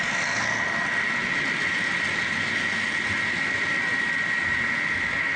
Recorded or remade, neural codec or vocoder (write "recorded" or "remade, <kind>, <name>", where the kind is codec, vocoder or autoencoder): recorded